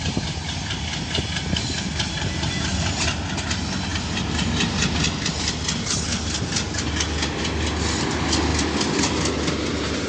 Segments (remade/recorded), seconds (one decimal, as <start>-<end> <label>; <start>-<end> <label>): 0.0-10.1 recorded